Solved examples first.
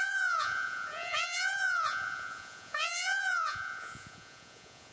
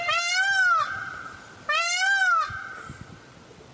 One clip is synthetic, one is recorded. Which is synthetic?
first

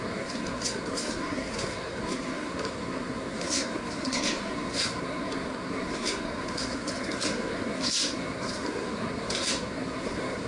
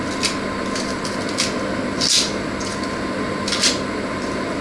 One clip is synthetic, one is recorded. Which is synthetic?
first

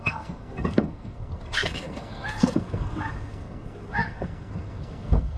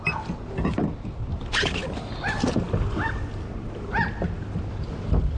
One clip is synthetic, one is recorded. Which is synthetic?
first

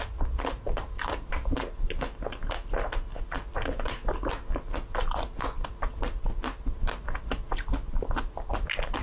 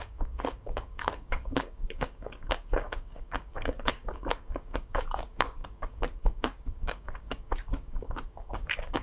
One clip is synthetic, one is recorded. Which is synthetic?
second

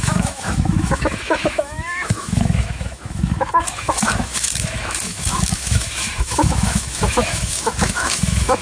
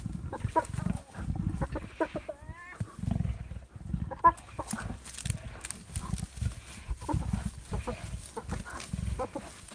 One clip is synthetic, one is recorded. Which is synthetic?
first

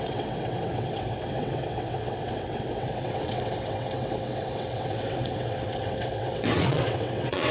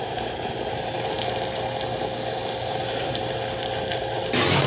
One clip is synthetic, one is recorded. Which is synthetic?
first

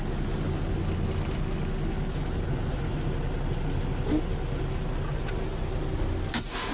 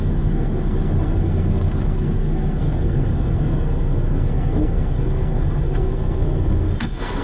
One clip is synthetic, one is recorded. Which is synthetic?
second